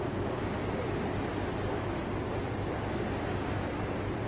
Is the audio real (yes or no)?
yes